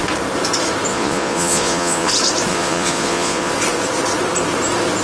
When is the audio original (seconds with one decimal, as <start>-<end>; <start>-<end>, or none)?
0.0-0.9; 2.1-2.5; 3.5-5.0